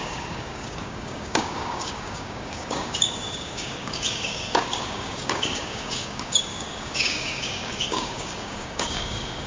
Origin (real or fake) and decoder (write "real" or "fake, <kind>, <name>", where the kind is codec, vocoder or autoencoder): fake, codec, DAC